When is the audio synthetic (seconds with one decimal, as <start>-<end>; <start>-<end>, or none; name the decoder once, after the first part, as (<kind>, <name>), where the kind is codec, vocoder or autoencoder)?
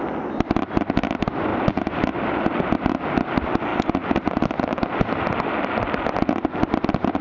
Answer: none